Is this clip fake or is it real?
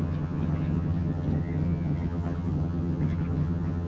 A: fake